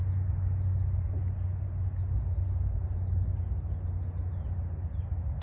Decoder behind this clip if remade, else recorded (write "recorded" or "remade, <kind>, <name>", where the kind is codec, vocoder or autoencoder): recorded